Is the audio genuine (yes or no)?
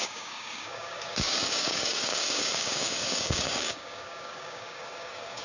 no